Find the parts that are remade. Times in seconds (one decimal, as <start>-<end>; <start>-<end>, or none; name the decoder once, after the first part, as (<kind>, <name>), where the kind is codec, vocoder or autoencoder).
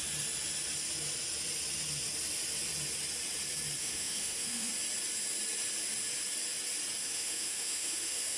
3.8-4.7 (autoencoder, DAC-VAE); 7.0-8.4